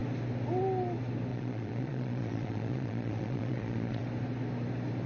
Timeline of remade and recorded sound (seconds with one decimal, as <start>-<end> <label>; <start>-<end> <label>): 0.0-1.3 recorded; 1.3-4.0 remade; 4.0-5.1 recorded